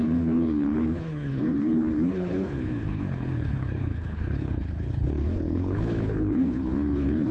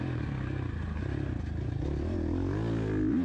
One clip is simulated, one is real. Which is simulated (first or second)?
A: first